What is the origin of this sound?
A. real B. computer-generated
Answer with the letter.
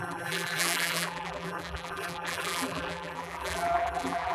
B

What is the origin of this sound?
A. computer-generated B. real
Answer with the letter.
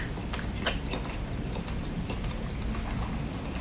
A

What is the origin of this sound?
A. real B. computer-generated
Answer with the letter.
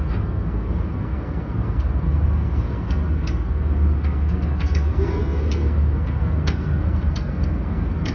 B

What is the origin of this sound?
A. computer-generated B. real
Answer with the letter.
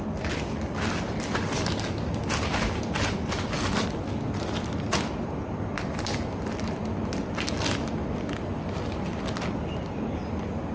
B